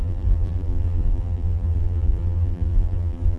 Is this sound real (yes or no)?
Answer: no